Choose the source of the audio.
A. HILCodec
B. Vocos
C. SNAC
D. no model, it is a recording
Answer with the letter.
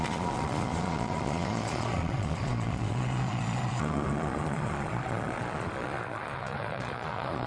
B